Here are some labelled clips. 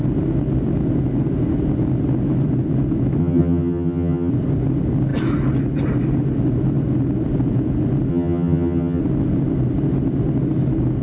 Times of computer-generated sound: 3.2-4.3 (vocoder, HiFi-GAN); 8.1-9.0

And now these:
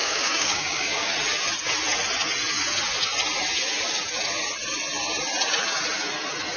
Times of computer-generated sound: 0.0-1.1 (codec, DAC)

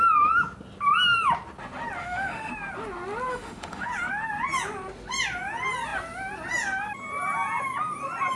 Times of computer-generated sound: 2.0-2.5 (autoencoder, DAC-VAE); 3.3-3.9